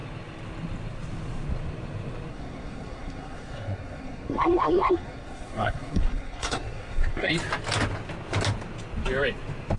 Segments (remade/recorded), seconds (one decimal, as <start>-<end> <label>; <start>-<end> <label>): 0.0-2.3 recorded; 2.3-7.3 remade; 7.3-9.8 recorded